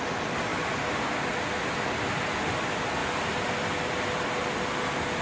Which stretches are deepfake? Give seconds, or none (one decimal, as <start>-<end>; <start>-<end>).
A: none